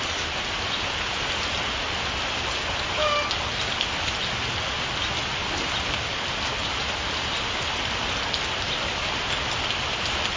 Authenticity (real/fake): real